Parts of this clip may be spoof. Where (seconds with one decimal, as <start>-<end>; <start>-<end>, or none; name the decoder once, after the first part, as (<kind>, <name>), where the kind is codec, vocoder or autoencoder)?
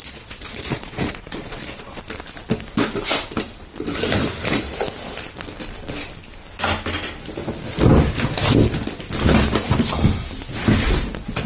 0.0-2.0 (vocoder, Vocos)